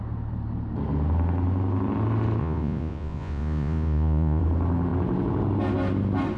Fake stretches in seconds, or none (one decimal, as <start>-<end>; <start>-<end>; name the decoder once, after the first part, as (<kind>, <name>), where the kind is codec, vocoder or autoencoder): 2.4-4.4 (vocoder, Vocos)